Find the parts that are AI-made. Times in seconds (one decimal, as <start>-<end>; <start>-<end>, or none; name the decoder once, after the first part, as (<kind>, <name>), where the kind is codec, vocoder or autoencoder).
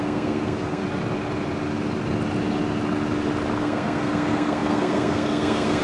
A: 0.0-0.8 (codec, SNAC); 3.6-5.8